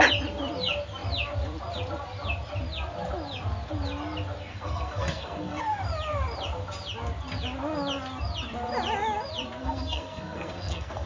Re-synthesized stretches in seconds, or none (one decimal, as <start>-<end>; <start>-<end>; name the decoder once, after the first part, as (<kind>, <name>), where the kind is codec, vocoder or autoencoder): 4.5-5.6 (codec, SNAC); 9.6-11.1